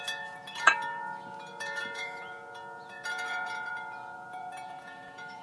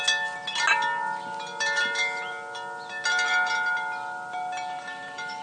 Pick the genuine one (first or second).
second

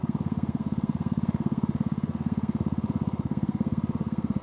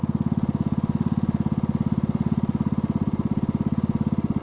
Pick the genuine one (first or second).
second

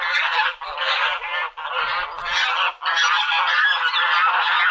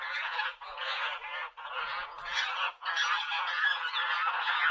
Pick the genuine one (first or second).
first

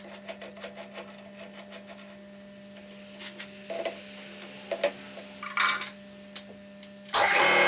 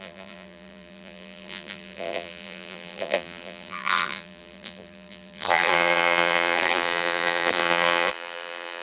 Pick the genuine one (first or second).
first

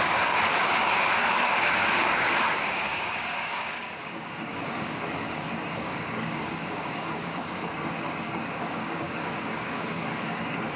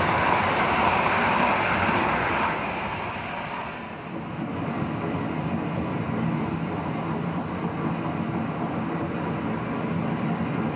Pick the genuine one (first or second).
second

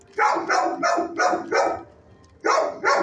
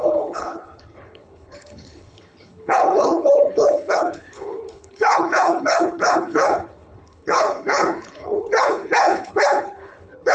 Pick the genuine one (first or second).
first